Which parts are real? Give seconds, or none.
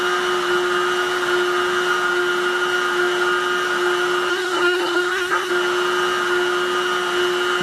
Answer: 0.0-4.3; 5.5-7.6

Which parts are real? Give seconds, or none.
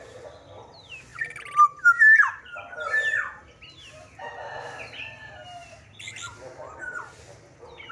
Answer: 0.0-7.9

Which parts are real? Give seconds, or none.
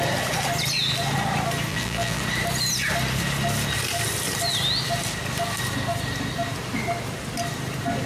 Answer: 0.0-1.7; 2.2-8.1